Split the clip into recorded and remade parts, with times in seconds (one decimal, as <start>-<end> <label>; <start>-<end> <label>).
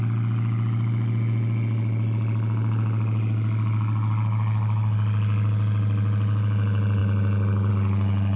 0.0-8.4 recorded